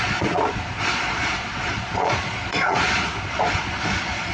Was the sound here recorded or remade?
remade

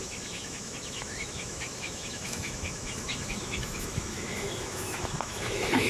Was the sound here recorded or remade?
remade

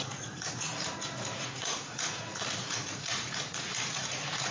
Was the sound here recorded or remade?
remade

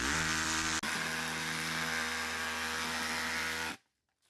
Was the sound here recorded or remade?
recorded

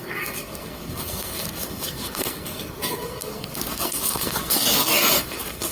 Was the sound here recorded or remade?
remade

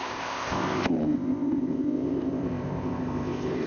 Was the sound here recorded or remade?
remade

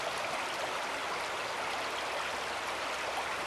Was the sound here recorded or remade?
recorded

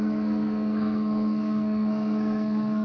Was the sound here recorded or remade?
remade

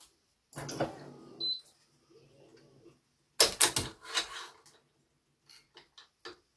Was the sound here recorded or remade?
recorded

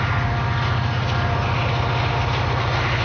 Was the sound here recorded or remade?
recorded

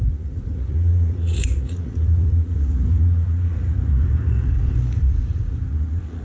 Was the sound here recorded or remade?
remade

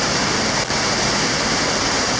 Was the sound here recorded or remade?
recorded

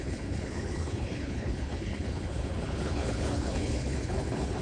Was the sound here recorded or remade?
remade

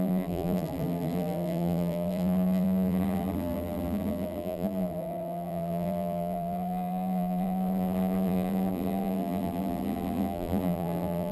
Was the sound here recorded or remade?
remade